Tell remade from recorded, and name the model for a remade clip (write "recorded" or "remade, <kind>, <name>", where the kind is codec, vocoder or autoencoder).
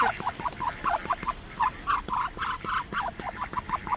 recorded